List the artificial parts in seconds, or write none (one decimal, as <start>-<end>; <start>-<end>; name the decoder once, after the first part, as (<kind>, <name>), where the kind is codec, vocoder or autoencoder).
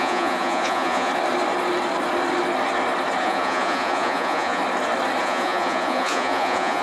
0.0-1.1 (vocoder, Vocos); 3.2-4.6; 5.2-6.8